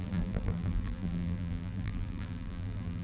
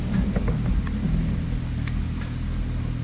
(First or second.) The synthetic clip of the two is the first